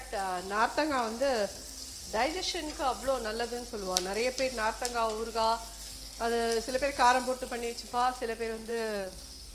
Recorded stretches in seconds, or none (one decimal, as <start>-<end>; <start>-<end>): 0.0-8.7